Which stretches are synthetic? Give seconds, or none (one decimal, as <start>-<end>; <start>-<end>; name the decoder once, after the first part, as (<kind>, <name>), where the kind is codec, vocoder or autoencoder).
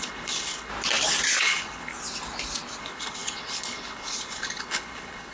0.0-0.7 (codec, HILCodec); 1.4-1.9; 2.8-5.3